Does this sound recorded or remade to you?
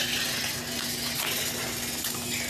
recorded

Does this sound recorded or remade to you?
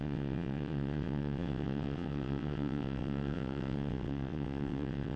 remade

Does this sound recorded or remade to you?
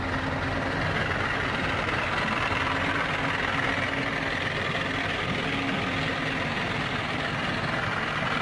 recorded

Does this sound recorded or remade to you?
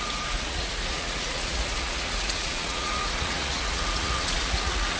remade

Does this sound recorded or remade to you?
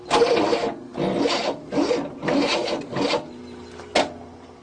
recorded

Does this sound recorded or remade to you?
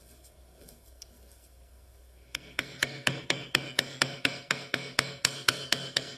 remade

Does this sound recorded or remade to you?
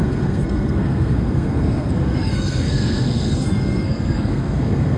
remade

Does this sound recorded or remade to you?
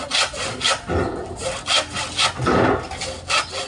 recorded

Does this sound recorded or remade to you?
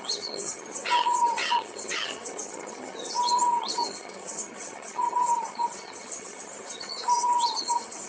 remade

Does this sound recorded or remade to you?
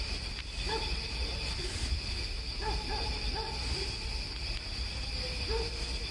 recorded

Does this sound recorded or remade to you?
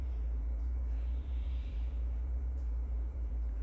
remade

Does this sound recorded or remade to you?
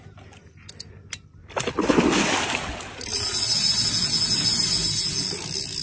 recorded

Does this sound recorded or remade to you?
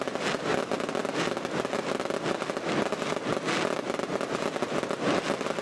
recorded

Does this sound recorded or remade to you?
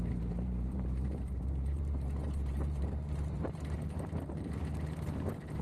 remade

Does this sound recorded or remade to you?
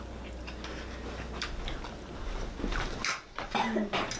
recorded